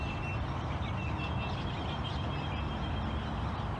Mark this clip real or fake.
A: real